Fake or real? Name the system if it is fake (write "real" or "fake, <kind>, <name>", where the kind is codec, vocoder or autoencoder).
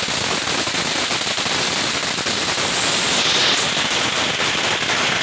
real